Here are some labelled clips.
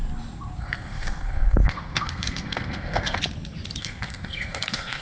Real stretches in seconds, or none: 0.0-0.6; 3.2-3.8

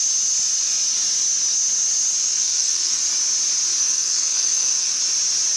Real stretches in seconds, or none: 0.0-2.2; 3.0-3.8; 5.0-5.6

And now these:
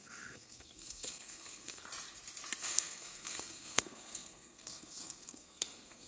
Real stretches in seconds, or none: 1.8-2.6